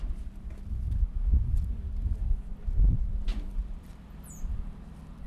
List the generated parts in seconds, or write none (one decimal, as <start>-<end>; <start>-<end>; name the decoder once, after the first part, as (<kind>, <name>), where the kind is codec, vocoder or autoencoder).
3.3-4.1 (vocoder, BigVGAN v2)